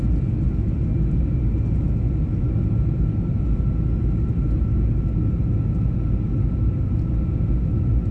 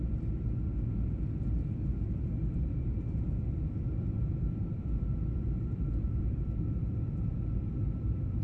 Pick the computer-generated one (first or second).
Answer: second